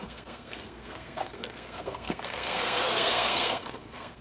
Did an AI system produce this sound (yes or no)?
yes